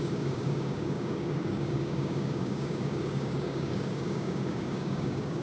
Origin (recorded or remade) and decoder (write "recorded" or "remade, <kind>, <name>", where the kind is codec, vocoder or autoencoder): remade, codec, DAC